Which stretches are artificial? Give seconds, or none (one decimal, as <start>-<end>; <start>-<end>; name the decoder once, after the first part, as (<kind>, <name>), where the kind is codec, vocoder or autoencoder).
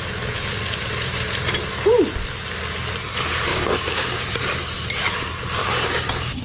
3.5-4.2 (codec, DAC); 5.6-6.4